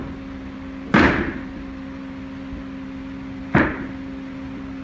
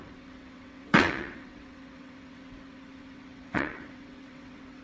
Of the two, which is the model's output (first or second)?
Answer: second